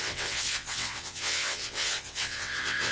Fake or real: fake